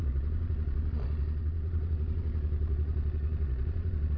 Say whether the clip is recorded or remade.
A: remade